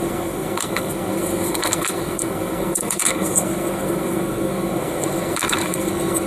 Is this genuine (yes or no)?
no